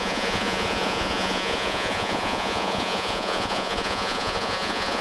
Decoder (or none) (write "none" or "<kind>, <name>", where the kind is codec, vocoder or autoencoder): vocoder, Vocos